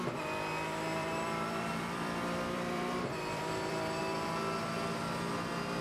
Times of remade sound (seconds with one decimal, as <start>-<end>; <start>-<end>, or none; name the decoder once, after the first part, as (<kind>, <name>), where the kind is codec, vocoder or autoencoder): 1.0-4.0 (vocoder, BigVGAN v2)